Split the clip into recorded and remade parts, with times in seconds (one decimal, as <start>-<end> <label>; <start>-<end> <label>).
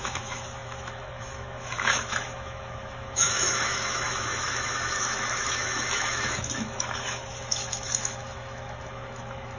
0.0-9.6 remade